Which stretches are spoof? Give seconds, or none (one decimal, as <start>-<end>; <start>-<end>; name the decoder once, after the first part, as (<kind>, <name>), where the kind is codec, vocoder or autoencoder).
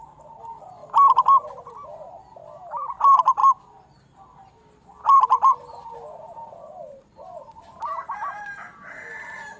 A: none